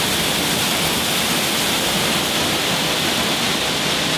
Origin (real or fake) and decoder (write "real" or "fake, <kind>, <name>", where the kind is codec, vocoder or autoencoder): fake, vocoder, BigVGAN v2